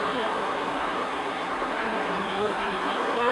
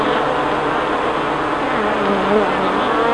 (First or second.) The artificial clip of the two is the first